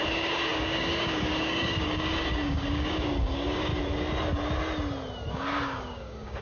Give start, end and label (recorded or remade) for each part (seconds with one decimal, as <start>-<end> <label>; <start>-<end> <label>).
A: 0.0-3.7 remade; 3.7-5.3 recorded; 5.3-6.4 remade